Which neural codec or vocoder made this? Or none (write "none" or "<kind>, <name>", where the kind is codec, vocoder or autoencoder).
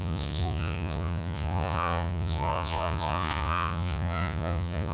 vocoder, Vocos